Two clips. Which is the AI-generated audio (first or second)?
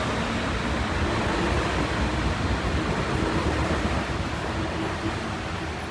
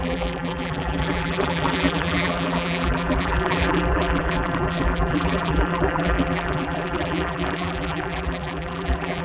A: second